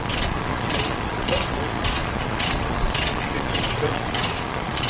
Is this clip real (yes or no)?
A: no